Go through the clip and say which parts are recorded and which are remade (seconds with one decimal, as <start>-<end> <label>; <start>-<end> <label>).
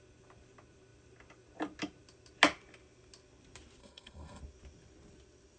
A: 0.0-3.8 recorded; 3.8-4.4 remade; 4.4-5.6 recorded